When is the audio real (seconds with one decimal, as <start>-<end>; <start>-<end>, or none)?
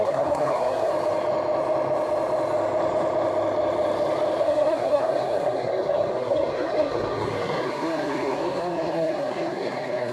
0.9-4.4